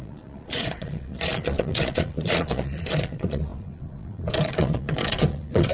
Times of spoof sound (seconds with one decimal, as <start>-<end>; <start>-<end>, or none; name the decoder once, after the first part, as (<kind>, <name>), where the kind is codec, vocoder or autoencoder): 0.0-5.7 (vocoder, Vocos)